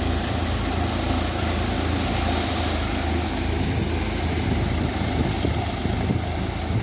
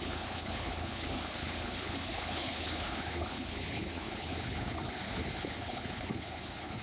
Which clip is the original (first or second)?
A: first